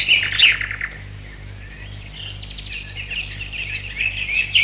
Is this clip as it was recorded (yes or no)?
yes